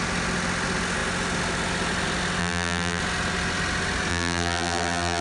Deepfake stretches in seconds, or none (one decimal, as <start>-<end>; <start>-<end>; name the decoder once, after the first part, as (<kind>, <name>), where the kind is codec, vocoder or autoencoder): 2.4-3.0 (vocoder, BigVGAN v2); 4.1-5.2